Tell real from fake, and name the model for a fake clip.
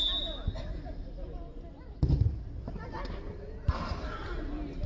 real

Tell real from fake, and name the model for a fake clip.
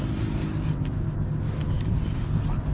real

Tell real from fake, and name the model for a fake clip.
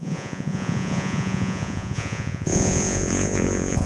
fake, vocoder, Vocos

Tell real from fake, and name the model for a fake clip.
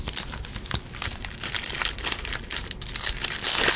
real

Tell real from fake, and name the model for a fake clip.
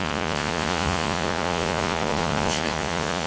fake, vocoder, Vocos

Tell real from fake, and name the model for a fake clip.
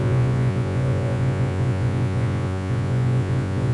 fake, vocoder, Vocos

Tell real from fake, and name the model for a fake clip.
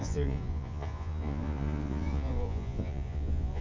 fake, vocoder, Vocos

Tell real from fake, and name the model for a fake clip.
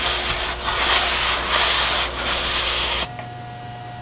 real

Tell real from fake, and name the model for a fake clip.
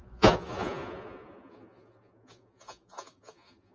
fake, vocoder, Vocos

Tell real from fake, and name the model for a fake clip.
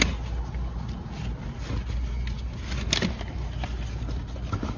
real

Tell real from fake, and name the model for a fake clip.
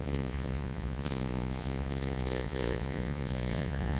fake, vocoder, Vocos